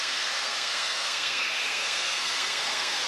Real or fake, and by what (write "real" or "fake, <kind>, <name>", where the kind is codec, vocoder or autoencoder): fake, codec, SNAC